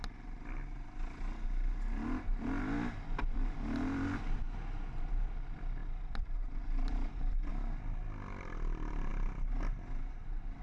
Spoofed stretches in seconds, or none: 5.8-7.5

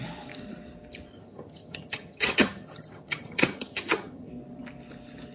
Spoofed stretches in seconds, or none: 1.1-4.3

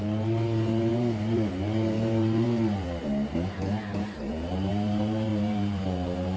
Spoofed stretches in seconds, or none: 0.0-6.4